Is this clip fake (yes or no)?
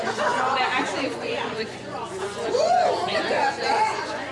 yes